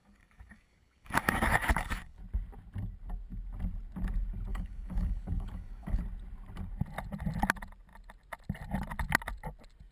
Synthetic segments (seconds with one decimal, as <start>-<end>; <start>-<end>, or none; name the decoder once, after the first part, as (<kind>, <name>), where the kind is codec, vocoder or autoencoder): 0.0-2.2 (codec, DAC); 4.5-6.0